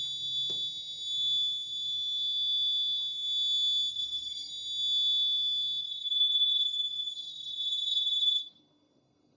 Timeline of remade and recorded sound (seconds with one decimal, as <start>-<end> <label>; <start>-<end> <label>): 0.0-3.9 recorded; 3.9-4.5 remade; 4.5-5.8 recorded; 5.8-9.4 remade